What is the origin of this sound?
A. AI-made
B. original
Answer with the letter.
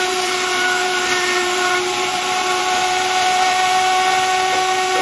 A